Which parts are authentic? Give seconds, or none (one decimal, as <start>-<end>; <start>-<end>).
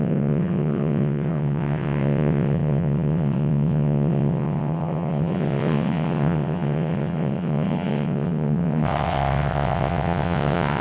none